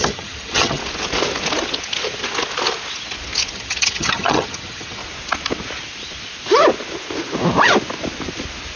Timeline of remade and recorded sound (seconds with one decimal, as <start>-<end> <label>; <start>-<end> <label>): 0.0-0.8 remade; 0.8-3.5 recorded; 3.5-5.0 remade; 5.0-8.8 recorded